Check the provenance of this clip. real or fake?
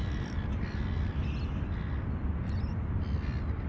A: real